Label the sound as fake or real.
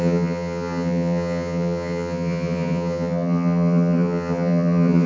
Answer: fake